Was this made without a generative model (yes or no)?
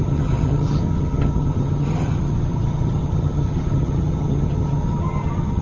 no